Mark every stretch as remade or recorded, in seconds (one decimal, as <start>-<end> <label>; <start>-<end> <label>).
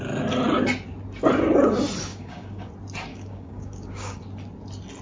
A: 0.0-2.1 recorded; 2.1-2.7 remade; 2.7-3.1 recorded; 3.1-4.2 remade; 4.2-5.0 recorded